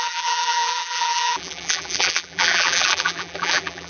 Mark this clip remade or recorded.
remade